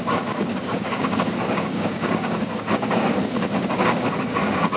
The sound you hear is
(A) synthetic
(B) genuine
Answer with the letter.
A